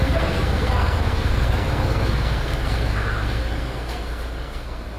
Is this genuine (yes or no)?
no